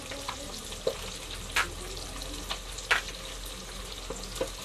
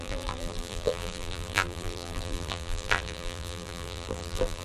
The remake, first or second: second